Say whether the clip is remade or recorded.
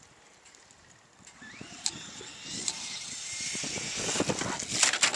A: recorded